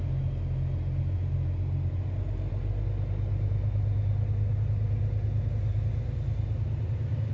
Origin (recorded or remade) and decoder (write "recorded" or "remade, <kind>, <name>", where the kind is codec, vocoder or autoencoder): recorded